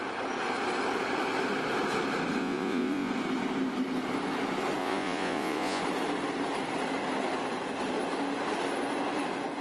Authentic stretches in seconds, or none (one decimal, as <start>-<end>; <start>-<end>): 0.0-2.4; 3.1-4.8; 5.8-9.6